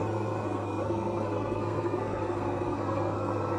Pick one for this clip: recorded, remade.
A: remade